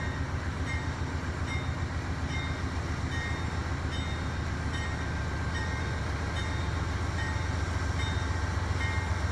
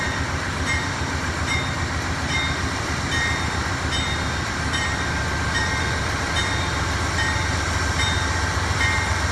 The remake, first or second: second